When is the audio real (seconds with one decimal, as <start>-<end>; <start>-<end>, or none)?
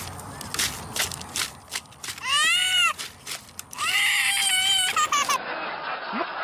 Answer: 0.0-1.4; 2.1-2.6; 5.7-6.4